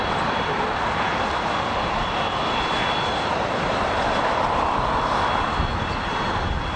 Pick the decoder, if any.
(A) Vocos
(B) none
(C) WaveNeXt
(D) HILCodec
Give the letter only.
B